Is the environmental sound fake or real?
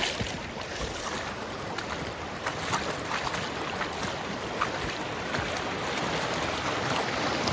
real